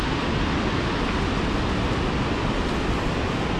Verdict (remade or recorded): recorded